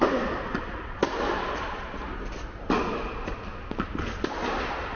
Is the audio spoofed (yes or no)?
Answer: no